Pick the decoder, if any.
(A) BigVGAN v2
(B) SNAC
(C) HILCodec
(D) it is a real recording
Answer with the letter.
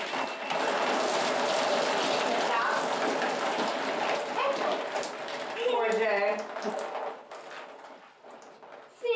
D